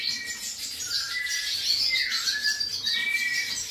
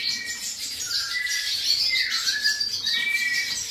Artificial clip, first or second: second